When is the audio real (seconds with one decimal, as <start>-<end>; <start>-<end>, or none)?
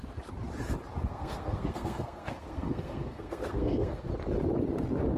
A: 0.0-1.0; 4.1-5.2